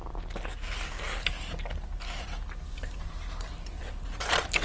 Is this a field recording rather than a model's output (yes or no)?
yes